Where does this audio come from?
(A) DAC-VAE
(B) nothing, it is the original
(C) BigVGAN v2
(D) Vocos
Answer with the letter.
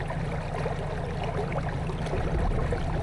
B